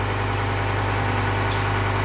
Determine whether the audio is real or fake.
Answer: real